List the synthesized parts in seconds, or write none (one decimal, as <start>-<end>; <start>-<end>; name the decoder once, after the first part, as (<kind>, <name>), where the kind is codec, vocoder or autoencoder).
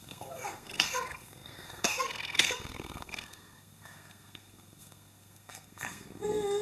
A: 0.0-6.6 (codec, SNAC)